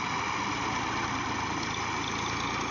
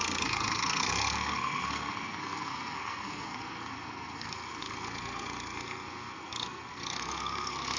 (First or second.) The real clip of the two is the first